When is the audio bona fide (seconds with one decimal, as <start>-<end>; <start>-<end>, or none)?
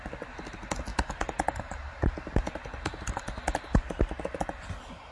0.0-5.1